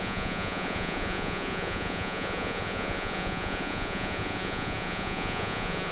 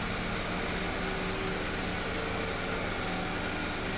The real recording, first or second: second